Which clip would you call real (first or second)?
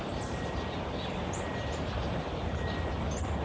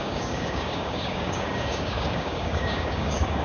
first